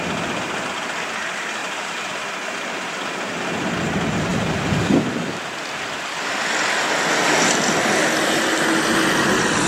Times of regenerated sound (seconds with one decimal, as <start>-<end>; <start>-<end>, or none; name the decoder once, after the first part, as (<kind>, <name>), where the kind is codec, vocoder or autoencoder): 1.6-2.1 (vocoder, BigVGAN v2); 4.3-6.3